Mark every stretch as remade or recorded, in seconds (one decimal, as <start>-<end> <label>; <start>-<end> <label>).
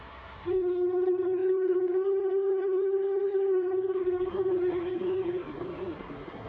0.0-6.5 remade